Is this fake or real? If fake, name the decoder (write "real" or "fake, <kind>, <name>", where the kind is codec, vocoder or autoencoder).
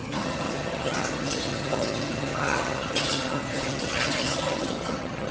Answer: fake, vocoder, HiFi-GAN